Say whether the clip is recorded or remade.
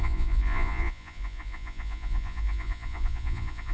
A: remade